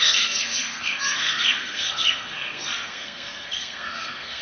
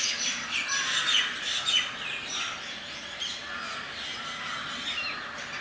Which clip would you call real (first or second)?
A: second